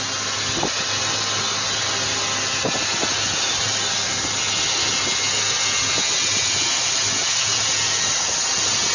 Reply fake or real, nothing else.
real